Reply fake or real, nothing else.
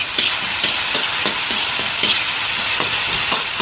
real